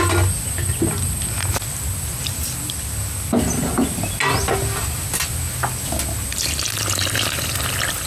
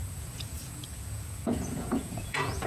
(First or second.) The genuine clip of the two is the first